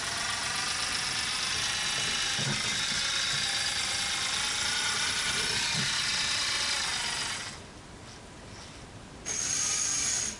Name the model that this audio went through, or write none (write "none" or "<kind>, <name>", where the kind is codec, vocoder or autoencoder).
none